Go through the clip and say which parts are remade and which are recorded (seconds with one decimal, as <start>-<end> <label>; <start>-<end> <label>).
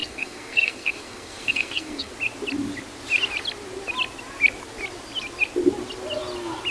0.0-2.1 remade; 2.1-6.7 recorded